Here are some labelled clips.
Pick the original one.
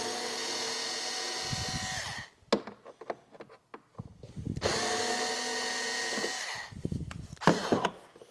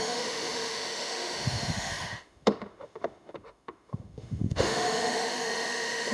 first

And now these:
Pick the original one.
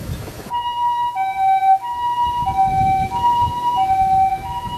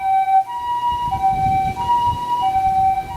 second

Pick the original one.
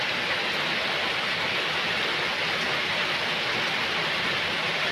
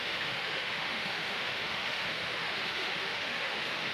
first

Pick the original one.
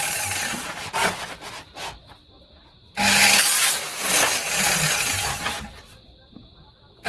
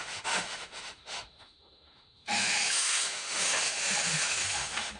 first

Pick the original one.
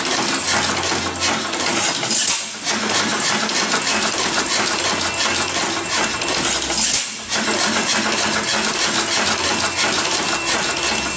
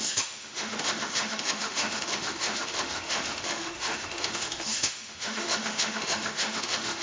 first